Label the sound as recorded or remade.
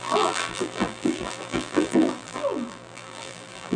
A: remade